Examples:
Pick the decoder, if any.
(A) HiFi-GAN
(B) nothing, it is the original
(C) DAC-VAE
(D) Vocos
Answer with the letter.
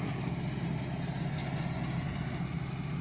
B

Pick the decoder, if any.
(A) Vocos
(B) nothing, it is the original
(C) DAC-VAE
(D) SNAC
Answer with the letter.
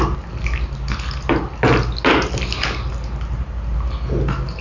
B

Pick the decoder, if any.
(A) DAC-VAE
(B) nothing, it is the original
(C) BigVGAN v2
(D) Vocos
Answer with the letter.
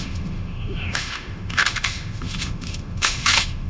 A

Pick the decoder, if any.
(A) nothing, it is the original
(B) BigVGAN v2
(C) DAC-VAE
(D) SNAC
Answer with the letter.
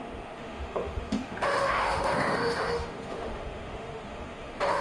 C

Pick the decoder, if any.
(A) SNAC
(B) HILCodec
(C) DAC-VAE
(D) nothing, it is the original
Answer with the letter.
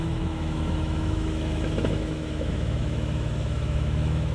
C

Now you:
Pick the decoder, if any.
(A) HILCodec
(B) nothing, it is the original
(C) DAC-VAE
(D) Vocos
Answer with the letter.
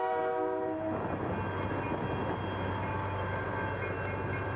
B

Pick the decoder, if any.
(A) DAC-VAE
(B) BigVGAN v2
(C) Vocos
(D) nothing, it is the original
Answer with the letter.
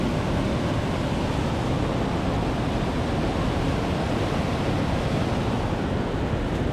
D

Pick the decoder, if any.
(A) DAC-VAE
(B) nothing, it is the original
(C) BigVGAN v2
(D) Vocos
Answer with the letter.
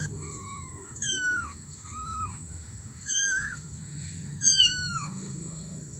A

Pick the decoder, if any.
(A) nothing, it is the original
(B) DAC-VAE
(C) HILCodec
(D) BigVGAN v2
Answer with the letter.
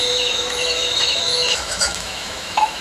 B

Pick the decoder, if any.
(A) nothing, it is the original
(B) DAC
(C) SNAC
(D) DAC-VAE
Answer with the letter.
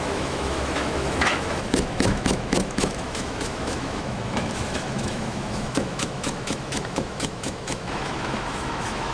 D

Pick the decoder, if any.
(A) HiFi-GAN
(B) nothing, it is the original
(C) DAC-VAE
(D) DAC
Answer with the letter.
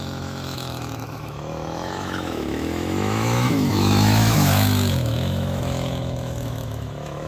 C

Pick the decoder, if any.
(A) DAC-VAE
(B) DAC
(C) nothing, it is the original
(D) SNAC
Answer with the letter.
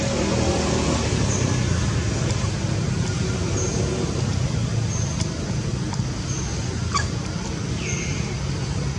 C